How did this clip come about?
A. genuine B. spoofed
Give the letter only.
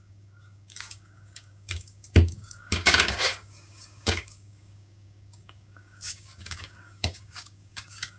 B